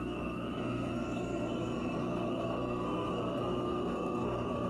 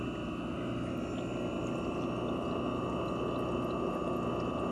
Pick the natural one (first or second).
second